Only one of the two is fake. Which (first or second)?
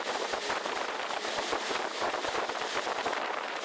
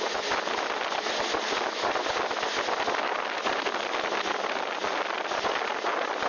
first